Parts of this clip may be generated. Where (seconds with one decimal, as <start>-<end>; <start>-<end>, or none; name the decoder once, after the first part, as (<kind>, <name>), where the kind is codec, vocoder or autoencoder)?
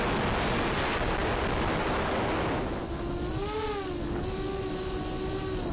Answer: none